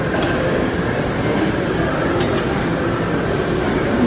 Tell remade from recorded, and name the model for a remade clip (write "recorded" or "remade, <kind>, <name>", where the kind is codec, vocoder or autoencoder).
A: recorded